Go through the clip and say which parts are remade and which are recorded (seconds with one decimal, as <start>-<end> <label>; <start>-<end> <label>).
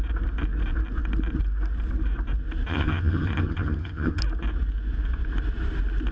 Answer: 0.0-2.7 recorded; 2.7-4.2 remade; 4.2-6.1 recorded